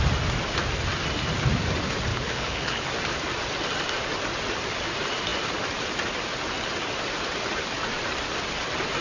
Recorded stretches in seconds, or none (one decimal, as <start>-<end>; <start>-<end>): 0.0-2.1; 2.9-9.0